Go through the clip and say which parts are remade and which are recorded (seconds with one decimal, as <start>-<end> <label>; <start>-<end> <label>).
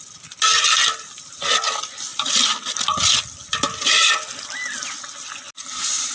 0.0-6.1 recorded